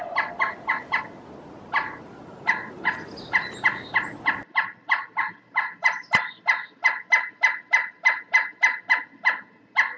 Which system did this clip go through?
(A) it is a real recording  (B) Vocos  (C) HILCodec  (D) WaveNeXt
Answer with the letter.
A